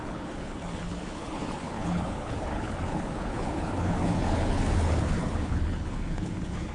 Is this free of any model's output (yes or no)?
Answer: no